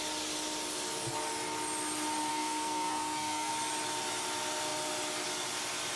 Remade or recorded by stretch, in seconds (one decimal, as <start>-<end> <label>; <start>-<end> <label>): 0.0-2.3 recorded; 2.3-3.5 remade; 3.5-6.0 recorded

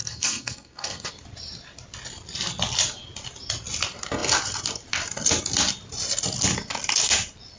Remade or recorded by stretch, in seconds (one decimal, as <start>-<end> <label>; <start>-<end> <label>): 0.0-1.1 remade; 1.1-7.6 recorded

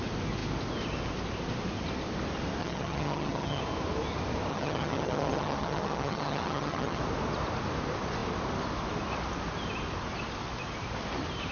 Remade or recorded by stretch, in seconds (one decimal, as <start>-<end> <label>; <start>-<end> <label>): 0.0-2.6 recorded; 2.6-3.6 remade; 3.6-4.5 recorded; 4.5-7.0 remade; 7.0-11.5 recorded

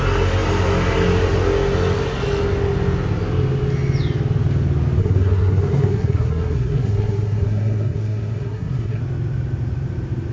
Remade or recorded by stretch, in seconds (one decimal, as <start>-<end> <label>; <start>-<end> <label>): 0.0-5.0 recorded; 5.0-9.0 remade; 9.0-10.3 recorded

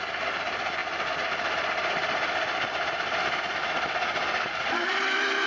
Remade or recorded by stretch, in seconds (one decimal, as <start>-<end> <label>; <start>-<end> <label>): 0.0-5.5 recorded

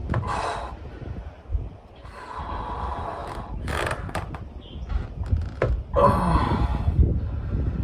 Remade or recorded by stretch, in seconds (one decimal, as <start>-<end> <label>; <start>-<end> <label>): 0.0-7.8 recorded

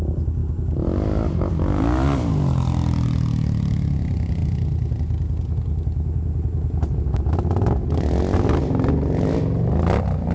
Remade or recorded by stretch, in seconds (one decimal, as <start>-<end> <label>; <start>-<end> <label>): 0.0-10.3 recorded

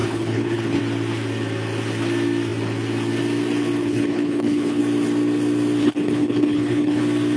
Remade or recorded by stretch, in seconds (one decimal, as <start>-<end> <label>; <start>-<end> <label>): 0.0-0.8 remade; 0.8-3.8 recorded; 3.8-4.8 remade; 4.8-5.8 recorded; 5.8-7.0 remade; 7.0-7.4 recorded